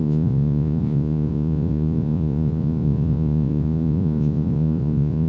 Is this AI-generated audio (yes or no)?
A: yes